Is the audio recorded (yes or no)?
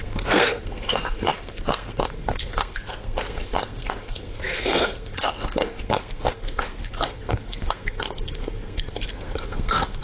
no